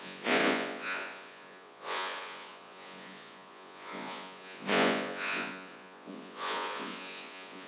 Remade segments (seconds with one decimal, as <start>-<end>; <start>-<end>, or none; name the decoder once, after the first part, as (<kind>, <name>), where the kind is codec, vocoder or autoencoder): 0.0-7.7 (vocoder, Vocos)